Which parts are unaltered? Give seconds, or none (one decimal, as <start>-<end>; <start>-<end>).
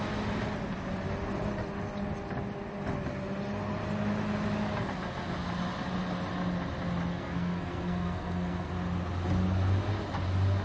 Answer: 0.0-7.1; 8.7-10.6